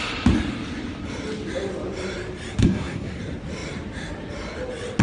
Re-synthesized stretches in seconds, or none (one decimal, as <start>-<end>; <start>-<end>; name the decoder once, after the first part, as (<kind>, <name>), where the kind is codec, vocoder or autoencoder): 2.6-3.2 (codec, SNAC)